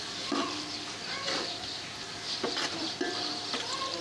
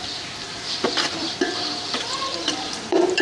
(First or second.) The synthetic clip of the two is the second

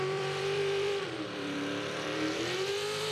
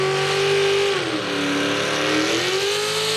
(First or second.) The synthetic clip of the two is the first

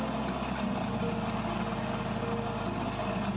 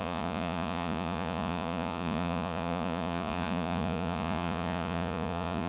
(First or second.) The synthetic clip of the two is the second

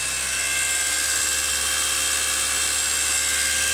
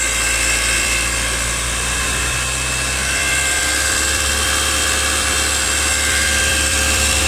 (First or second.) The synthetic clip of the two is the second